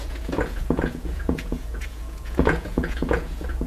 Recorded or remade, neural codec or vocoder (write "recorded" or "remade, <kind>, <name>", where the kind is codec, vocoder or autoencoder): remade, vocoder, Vocos